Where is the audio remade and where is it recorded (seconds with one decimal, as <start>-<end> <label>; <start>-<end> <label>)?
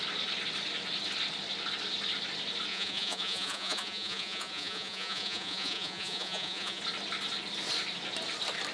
0.0-2.7 recorded; 2.7-6.8 remade; 6.8-8.7 recorded